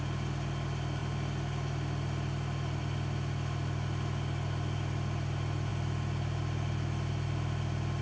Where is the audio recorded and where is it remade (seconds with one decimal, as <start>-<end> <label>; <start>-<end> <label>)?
0.0-8.0 recorded